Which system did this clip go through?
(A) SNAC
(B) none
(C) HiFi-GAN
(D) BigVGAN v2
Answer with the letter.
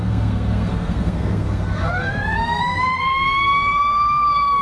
A